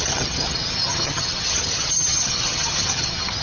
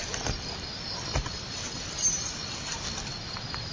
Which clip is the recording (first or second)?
second